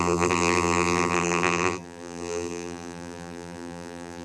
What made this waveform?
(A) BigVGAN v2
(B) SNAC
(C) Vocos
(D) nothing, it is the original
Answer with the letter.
A